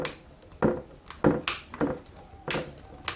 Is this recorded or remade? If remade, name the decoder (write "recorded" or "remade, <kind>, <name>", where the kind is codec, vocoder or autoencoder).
recorded